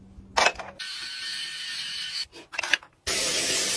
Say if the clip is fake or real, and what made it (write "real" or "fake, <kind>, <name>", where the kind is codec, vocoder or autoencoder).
real